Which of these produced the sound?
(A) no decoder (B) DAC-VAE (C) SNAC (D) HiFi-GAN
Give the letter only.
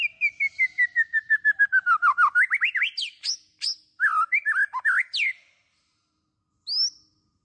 A